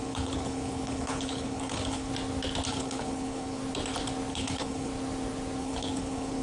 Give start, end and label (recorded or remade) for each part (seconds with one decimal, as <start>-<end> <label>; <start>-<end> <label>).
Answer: 0.0-2.1 remade; 2.1-2.7 recorded; 2.7-3.6 remade; 3.6-4.3 recorded; 4.3-4.9 remade; 4.9-5.6 recorded; 5.6-6.4 remade